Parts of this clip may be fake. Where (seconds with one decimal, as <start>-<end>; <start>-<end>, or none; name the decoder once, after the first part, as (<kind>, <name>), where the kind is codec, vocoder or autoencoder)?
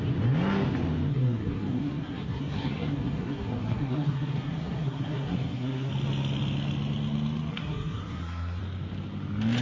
1.1-5.9 (codec, SNAC); 7.5-8.6